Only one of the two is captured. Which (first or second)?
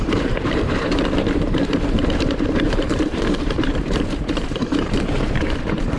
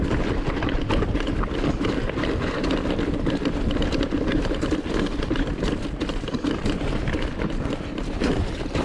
second